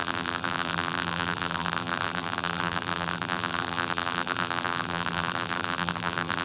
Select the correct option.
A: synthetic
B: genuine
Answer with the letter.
A